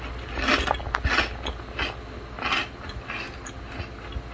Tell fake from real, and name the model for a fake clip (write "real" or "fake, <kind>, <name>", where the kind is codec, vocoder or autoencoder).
real